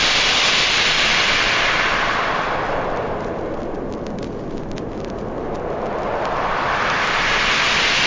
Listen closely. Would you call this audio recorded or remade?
recorded